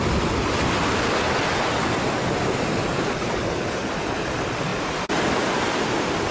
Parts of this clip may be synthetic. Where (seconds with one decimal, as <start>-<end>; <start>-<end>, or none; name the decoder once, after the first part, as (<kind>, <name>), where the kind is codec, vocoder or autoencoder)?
none